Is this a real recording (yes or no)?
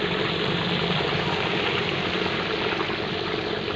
yes